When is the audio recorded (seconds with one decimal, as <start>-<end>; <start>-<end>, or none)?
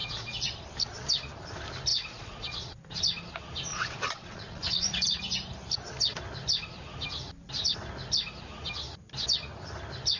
0.6-1.9; 3.0-3.7; 5.2-10.2